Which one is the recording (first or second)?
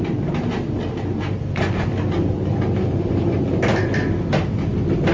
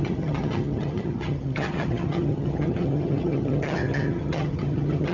first